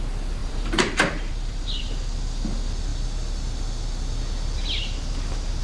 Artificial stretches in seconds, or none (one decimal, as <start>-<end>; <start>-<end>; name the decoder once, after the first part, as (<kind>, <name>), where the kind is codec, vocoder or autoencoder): 0.4-1.8 (vocoder, BigVGAN v2)